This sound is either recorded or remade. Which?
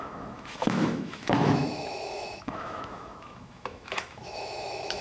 remade